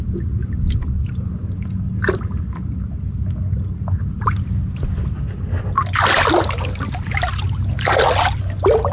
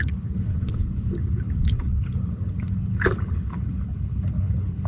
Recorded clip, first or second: first